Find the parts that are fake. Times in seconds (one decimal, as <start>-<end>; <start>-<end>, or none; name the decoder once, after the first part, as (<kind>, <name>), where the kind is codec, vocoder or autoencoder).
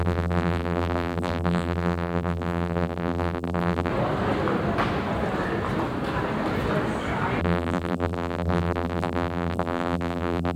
0.0-3.9 (vocoder, BigVGAN v2); 7.4-10.6